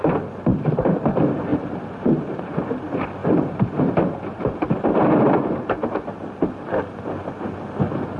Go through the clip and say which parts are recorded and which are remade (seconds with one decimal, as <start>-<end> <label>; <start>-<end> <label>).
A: 0.0-0.5 recorded; 0.5-1.1 remade; 1.1-1.5 recorded; 1.5-2.7 remade; 2.7-3.2 recorded; 3.2-6.3 remade; 6.3-8.2 recorded